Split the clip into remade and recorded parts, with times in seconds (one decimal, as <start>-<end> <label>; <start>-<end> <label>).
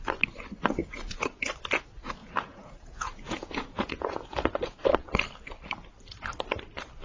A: 0.0-0.8 recorded; 0.8-1.5 remade; 1.5-2.2 recorded; 2.2-4.9 remade; 4.9-7.0 recorded